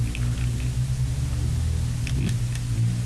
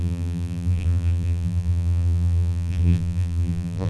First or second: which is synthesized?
second